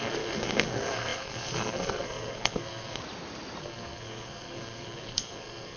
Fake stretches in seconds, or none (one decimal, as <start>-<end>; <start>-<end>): 0.0-3.0; 3.6-5.8